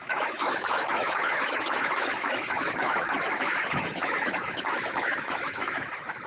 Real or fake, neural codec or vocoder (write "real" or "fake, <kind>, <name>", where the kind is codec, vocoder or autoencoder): fake, autoencoder, DAC-VAE